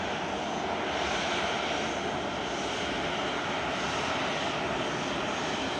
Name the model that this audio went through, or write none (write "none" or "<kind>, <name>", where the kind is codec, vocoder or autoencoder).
none